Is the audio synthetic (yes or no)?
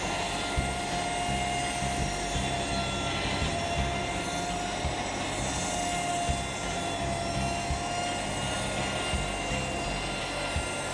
no